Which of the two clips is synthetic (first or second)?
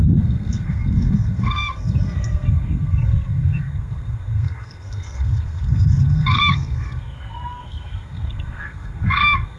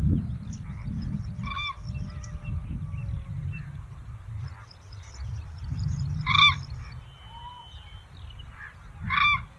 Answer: first